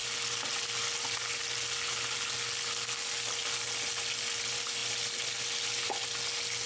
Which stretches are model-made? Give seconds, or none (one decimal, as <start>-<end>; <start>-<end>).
none